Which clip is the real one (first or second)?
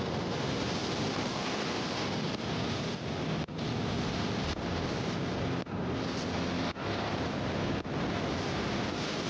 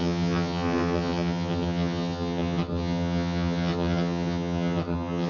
first